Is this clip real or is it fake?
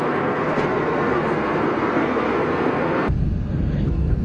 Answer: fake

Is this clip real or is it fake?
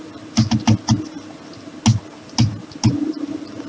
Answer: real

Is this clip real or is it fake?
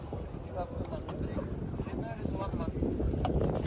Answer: real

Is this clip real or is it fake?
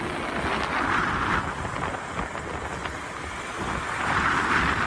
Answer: real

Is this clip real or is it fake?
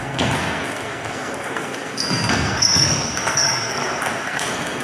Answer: fake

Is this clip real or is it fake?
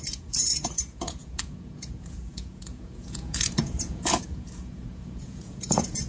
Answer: fake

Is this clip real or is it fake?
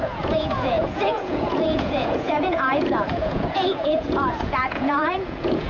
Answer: fake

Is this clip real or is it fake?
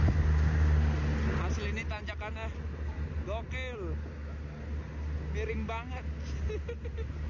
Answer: real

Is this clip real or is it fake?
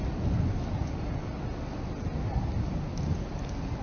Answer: real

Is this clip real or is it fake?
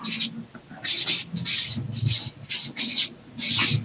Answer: real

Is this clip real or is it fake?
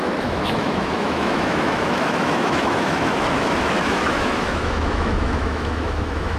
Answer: fake